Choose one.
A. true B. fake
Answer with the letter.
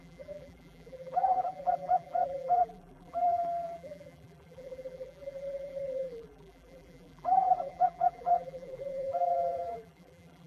B